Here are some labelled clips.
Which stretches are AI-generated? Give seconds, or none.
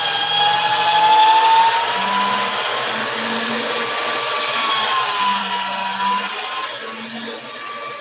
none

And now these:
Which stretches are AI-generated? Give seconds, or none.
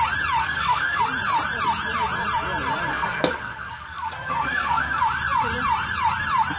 0.4-1.0; 2.9-5.0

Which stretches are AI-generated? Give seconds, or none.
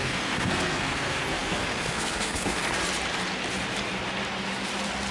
0.0-2.6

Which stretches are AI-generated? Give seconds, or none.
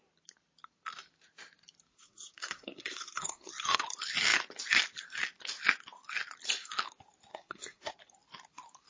1.9-3.5; 7.3-7.9